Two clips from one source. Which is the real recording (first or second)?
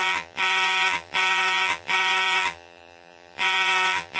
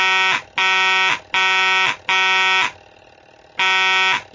second